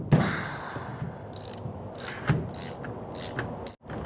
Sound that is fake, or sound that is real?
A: real